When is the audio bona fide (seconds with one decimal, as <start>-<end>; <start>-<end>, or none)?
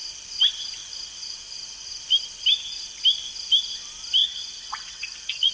0.0-0.8; 1.9-4.2